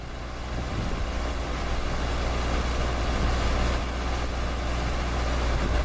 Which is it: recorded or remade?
recorded